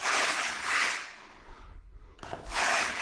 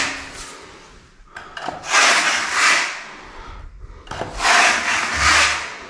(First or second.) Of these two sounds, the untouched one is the second